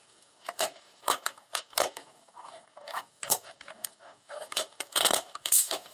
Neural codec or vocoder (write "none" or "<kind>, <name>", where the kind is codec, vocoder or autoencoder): codec, DAC